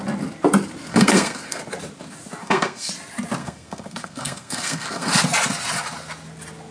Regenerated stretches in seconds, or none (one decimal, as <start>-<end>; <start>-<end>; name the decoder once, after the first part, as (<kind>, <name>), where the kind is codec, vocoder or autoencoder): 0.9-1.6 (codec, SNAC); 2.4-2.9; 3.4-5.1